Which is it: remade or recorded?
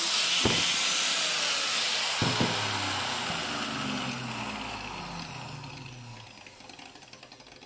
recorded